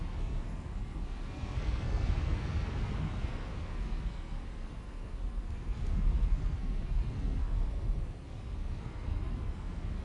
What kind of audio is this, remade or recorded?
remade